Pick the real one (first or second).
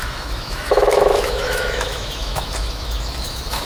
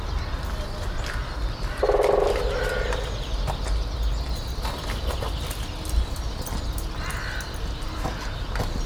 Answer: second